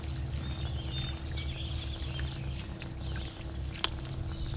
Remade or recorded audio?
recorded